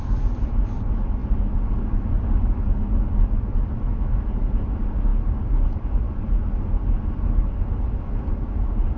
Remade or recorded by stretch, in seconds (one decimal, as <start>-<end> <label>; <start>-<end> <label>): 0.0-9.0 recorded